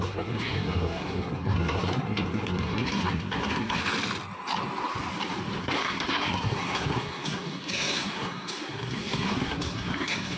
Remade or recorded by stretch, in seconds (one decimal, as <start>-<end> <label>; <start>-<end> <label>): 0.0-3.8 remade; 3.8-5.6 recorded; 5.6-10.4 remade